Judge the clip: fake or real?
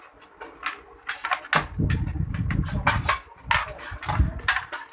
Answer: real